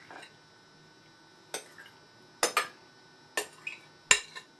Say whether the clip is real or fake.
real